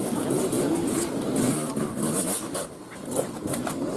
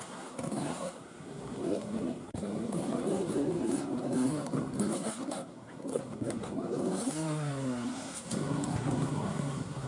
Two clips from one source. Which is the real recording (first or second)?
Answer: first